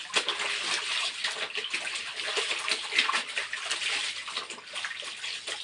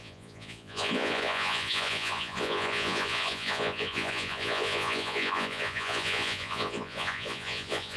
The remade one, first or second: second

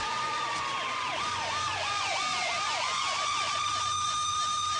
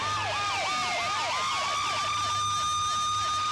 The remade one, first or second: first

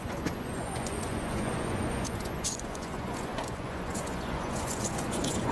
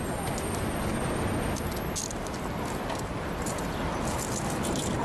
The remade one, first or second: first